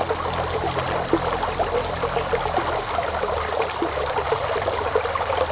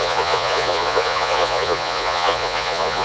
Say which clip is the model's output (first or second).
second